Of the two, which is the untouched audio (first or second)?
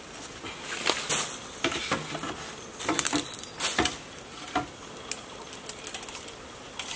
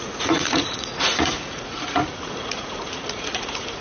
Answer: first